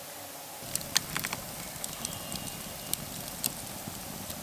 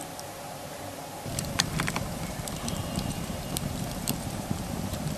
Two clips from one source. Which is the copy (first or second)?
second